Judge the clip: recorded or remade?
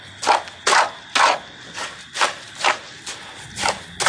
recorded